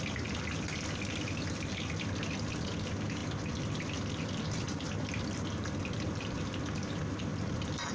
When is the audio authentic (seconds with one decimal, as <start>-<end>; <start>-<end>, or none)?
0.0-7.9